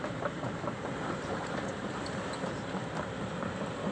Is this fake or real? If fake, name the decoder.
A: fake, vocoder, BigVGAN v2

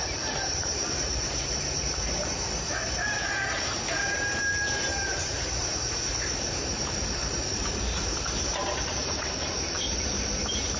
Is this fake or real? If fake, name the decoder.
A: fake, vocoder, BigVGAN v2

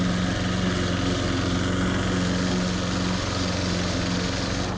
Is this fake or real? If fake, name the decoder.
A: real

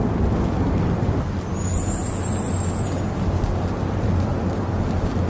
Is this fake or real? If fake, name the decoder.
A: real